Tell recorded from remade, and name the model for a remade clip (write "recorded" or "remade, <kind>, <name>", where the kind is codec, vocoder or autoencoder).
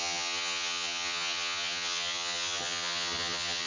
remade, vocoder, HiFi-GAN